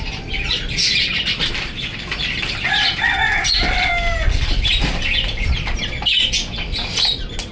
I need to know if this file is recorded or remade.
recorded